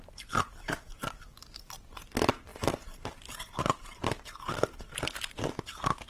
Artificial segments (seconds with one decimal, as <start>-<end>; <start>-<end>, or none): 2.5-4.2